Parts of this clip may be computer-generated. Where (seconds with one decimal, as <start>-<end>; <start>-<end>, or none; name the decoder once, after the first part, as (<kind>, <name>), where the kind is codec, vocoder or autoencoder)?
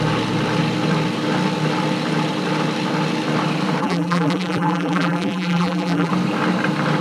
3.8-6.1 (vocoder, BigVGAN v2)